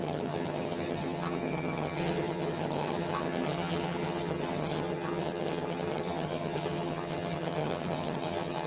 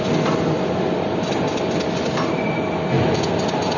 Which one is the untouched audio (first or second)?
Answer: second